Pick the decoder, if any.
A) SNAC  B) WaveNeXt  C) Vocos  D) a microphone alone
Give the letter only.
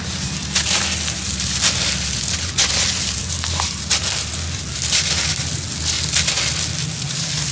D